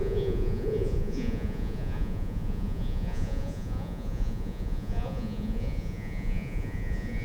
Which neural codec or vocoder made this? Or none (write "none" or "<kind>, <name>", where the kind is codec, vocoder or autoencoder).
vocoder, Vocos